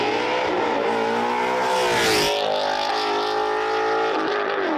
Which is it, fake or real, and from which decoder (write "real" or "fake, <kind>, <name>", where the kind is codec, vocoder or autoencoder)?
real